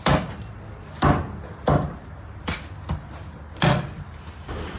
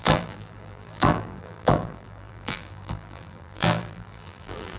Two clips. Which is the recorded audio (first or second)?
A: first